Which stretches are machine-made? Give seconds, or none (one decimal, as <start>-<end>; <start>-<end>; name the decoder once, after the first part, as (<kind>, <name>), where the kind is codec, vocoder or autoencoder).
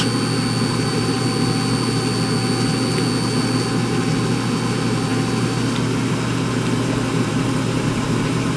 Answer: 0.7-1.2 (vocoder, BigVGAN v2); 7.3-8.6